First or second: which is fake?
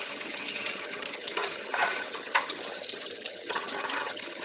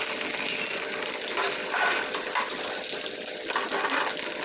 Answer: first